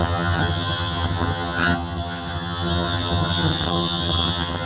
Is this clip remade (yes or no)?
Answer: yes